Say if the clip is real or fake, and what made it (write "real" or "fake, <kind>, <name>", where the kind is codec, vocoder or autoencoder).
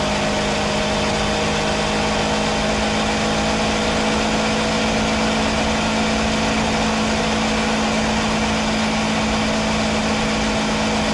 real